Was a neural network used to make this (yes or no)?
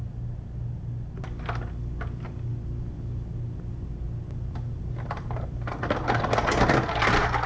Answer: no